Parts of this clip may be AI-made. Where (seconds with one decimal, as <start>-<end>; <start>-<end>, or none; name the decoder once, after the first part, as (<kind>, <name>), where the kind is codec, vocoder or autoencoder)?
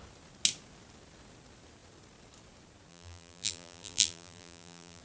2.9-5.0 (vocoder, BigVGAN v2)